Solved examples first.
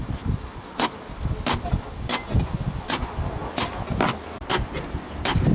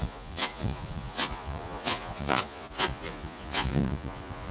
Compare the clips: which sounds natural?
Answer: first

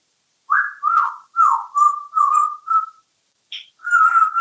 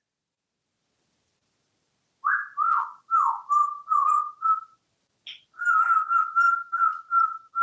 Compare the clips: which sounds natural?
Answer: second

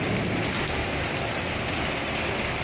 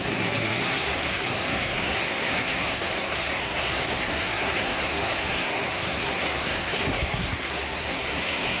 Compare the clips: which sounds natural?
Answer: first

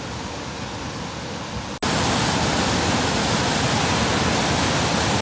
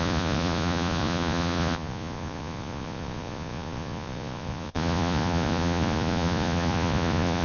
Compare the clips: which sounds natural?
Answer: first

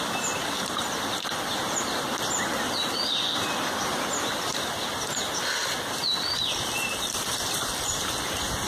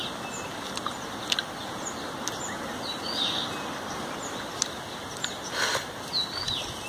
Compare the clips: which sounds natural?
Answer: second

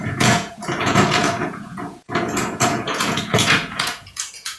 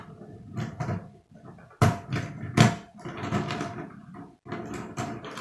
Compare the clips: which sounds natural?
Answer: second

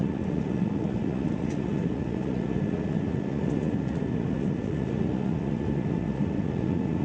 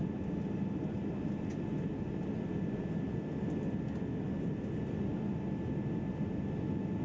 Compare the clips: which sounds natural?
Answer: second